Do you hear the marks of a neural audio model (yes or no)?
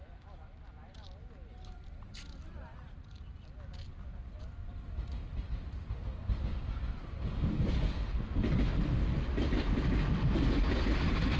no